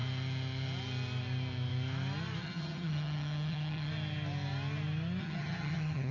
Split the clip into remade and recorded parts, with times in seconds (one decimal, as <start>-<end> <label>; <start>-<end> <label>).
0.0-2.4 recorded; 2.4-3.9 remade; 3.9-5.2 recorded; 5.2-6.1 remade